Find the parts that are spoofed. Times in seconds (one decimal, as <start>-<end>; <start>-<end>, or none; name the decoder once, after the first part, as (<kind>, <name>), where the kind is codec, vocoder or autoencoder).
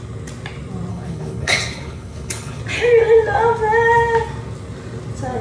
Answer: 0.9-2.6 (codec, HILCodec)